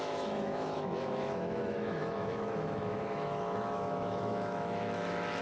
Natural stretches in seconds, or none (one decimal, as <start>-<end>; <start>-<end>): none